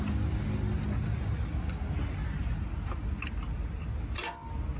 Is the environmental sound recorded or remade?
recorded